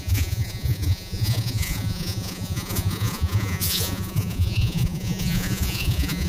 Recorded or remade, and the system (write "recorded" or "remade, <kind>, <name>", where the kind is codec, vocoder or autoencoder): remade, vocoder, Vocos